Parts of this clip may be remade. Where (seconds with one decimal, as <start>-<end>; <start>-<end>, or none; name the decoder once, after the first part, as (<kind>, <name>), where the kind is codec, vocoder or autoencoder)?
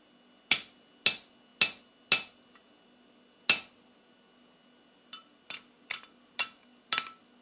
none